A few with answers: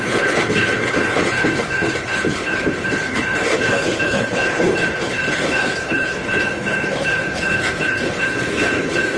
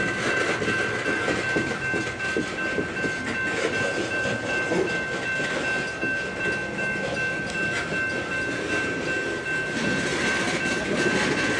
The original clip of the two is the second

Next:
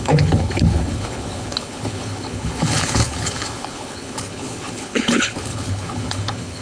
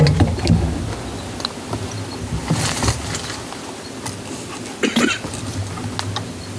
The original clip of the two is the second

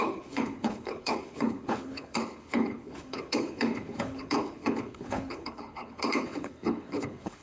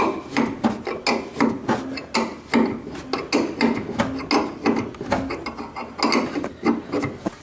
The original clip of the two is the second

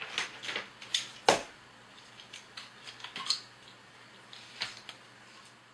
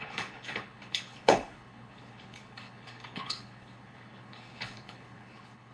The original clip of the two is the first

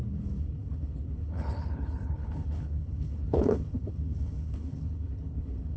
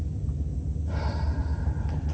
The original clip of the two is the second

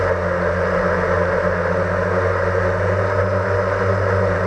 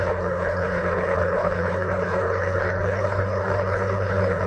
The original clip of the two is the first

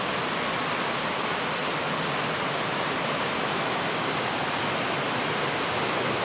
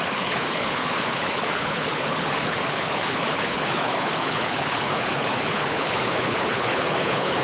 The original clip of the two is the first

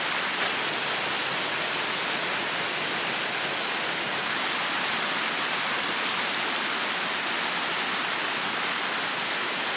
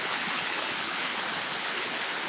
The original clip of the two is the first